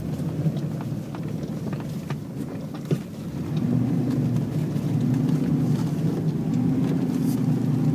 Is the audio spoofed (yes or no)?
no